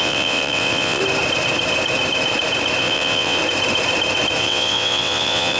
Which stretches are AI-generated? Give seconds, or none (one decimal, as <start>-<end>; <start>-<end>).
0.0-1.0; 2.8-3.4; 4.4-5.6

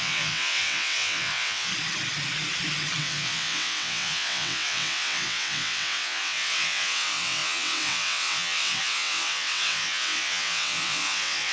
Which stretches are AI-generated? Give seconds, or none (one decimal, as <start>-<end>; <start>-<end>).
0.0-1.7; 3.0-11.5

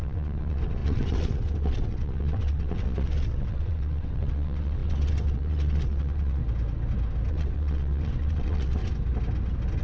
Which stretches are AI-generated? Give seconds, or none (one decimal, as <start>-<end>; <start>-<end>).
0.0-6.4; 7.3-8.8

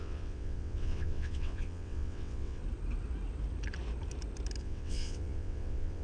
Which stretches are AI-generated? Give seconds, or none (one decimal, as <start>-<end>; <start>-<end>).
0.0-2.6; 4.6-6.0

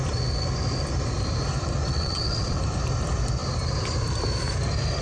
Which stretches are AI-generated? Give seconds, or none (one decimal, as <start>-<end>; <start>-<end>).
1.9-2.6